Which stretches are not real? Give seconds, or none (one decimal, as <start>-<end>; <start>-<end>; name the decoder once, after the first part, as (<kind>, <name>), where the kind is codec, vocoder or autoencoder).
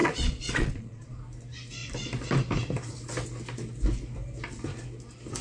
0.0-1.2 (vocoder, Vocos)